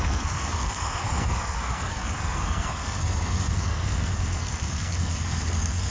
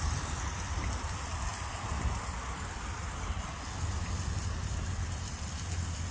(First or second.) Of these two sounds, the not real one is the first